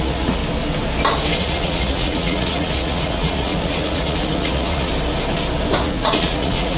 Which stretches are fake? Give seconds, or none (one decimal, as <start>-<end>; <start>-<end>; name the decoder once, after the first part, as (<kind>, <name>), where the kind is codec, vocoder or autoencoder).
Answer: 0.0-0.4 (vocoder, Vocos); 1.4-4.9; 5.8-6.8